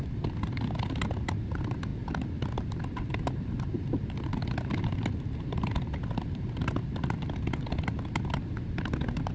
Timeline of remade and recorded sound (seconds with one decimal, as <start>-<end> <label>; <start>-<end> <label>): 0.0-9.3 recorded